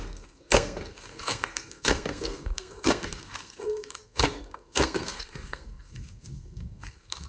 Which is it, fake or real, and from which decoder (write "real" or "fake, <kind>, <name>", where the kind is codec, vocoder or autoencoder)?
fake, codec, SNAC